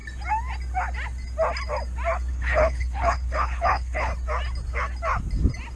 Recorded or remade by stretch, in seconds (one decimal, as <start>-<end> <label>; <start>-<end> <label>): 0.0-2.3 recorded; 2.3-4.1 remade; 4.1-5.8 recorded